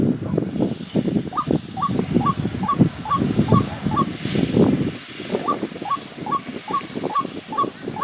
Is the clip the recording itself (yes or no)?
yes